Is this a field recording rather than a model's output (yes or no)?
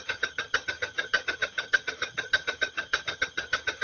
no